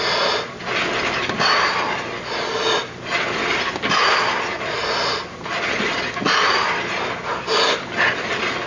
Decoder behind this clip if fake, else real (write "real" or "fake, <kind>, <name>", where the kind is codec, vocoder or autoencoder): real